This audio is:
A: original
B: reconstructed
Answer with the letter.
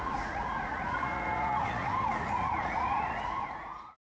B